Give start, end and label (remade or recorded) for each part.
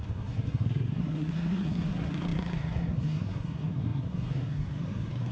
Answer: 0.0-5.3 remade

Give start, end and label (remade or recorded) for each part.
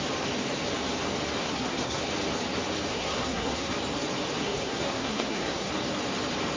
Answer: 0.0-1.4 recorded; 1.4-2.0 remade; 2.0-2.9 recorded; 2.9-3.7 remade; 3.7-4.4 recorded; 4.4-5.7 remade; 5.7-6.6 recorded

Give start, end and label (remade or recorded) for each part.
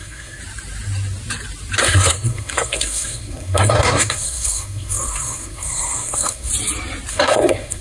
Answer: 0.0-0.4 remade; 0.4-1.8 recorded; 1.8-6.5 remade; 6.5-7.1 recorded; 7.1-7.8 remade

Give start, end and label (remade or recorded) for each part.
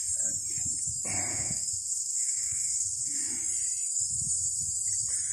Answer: 0.0-1.3 recorded; 1.3-3.3 remade; 3.3-5.3 recorded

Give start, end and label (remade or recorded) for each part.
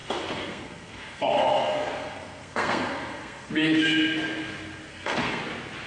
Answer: 0.0-3.5 remade; 3.5-4.9 recorded; 4.9-5.4 remade; 5.4-5.9 recorded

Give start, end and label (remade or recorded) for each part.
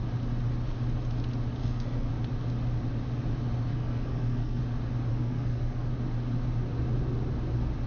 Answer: 0.0-1.6 recorded; 1.6-2.1 remade; 2.1-3.7 recorded; 3.7-4.6 remade; 4.6-5.1 recorded; 5.1-5.9 remade; 5.9-7.9 recorded